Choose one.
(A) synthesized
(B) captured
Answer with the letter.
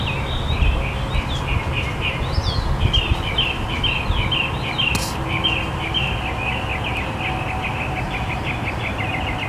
B